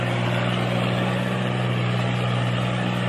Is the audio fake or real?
real